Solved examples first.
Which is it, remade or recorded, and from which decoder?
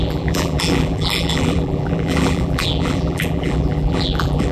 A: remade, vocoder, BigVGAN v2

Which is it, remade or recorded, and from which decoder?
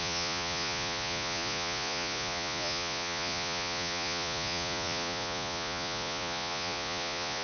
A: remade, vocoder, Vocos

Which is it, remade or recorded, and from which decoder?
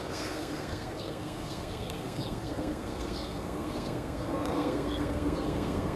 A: remade, codec, SNAC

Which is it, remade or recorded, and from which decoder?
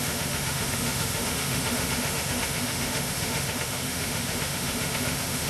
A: remade, autoencoder, DAC-VAE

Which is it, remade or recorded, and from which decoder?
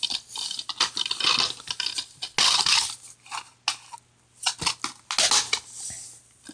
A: recorded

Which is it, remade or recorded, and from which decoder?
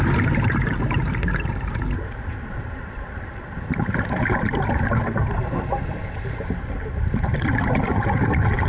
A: remade, vocoder, BigVGAN v2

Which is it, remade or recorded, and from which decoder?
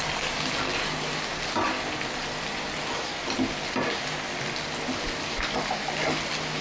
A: recorded